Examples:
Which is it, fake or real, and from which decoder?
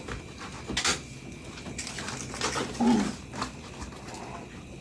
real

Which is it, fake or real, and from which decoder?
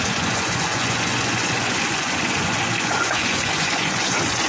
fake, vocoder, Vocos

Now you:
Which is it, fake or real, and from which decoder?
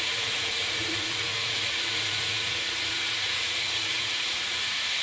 fake, vocoder, Vocos